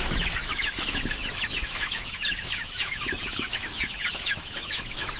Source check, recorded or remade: remade